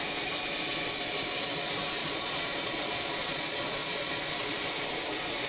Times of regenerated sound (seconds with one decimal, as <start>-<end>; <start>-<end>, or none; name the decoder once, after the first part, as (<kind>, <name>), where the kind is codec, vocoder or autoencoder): 2.0-4.2 (vocoder, Vocos)